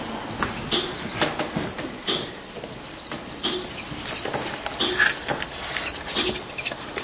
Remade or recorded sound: recorded